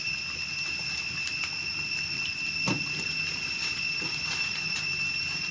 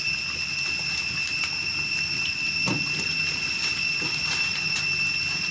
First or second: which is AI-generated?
first